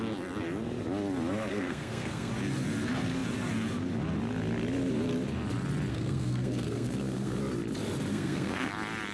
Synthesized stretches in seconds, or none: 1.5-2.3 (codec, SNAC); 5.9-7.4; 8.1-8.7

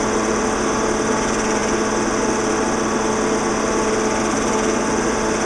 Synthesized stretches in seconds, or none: none

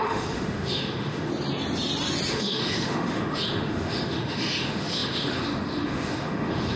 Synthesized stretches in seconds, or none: 0.0-1.3 (autoencoder, DAC-VAE); 2.3-6.8

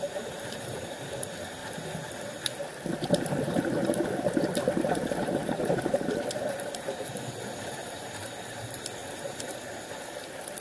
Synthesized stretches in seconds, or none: 0.0-1.6 (vocoder, BigVGAN v2); 3.3-3.8; 4.9-9.0

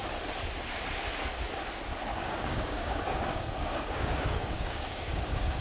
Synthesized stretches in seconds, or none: 2.1-5.6 (codec, DAC)

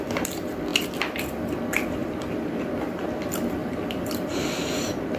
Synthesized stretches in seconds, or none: 3.6-4.6 (vocoder, BigVGAN v2)